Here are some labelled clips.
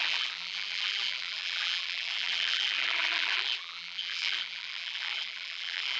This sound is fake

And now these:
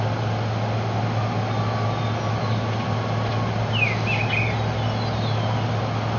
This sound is real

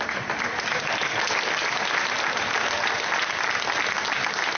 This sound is real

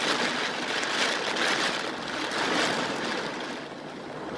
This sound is real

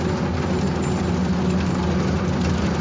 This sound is real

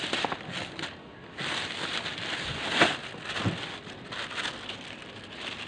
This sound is real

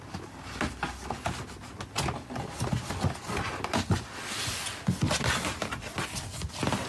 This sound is real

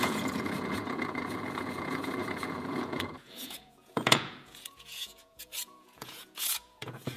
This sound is fake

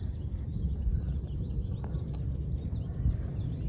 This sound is real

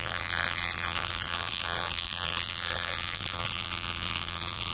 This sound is fake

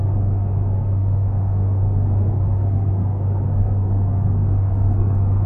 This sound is fake